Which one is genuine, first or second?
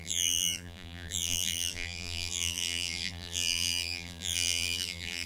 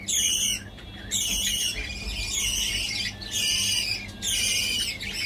second